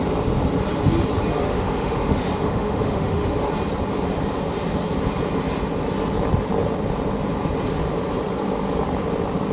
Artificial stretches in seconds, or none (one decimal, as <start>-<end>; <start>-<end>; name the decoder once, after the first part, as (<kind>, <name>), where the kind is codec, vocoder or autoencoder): 1.5-3.5 (autoencoder, DAC-VAE)